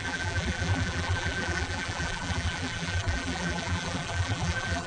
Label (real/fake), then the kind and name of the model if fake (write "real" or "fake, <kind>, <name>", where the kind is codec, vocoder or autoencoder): fake, vocoder, BigVGAN v2